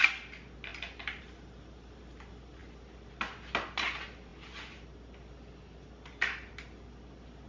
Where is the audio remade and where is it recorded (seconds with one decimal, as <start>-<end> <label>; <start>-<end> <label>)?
0.0-7.5 recorded